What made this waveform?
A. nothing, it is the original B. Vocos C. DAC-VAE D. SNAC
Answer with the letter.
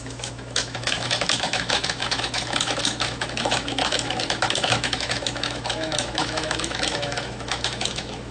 C